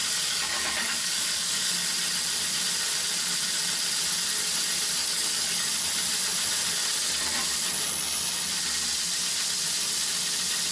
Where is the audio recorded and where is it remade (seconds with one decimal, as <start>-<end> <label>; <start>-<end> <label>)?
0.0-1.8 remade; 1.8-5.0 recorded; 5.0-5.7 remade; 5.7-10.7 recorded